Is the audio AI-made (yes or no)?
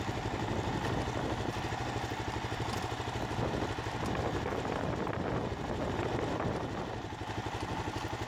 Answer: no